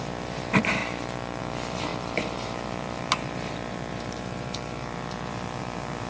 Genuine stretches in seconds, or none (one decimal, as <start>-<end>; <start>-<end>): 0.8-1.4